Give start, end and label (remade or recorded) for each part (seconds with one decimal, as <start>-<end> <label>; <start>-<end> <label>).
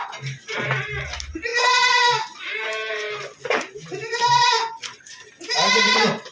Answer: 0.0-6.3 recorded